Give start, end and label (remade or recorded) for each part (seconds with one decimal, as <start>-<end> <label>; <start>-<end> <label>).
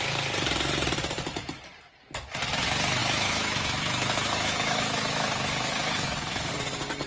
0.0-3.0 recorded; 3.0-6.5 remade; 6.5-7.1 recorded